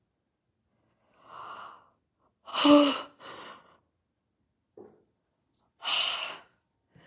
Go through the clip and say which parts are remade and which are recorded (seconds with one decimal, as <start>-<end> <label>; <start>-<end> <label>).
0.0-7.1 recorded